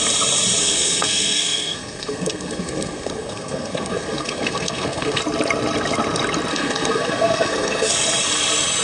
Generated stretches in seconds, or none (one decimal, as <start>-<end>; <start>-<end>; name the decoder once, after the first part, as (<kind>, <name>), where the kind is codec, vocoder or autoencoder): 0.6-5.2 (codec, SNAC); 6.5-7.9